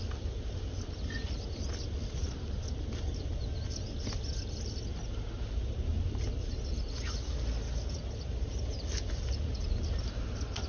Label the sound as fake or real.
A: real